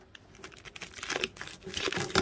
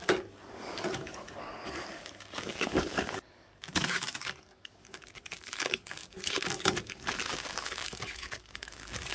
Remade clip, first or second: second